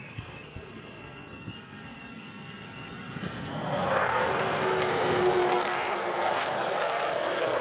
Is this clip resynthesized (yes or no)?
yes